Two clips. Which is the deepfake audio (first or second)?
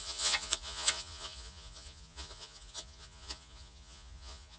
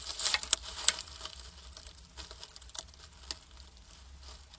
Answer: first